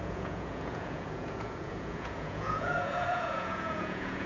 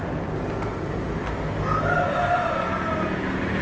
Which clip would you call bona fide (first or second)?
second